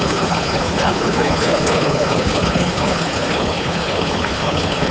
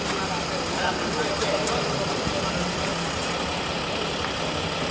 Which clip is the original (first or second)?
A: second